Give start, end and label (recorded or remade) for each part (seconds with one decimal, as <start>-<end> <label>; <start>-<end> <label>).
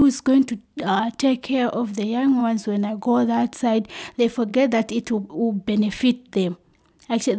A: 0.0-2.4 recorded; 2.4-2.9 remade; 2.9-7.4 recorded